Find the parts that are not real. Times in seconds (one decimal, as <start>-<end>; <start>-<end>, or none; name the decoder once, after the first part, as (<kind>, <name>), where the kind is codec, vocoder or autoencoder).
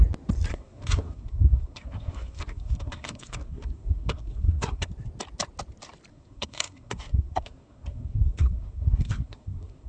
0.5-4.9 (codec, SNAC); 6.1-9.9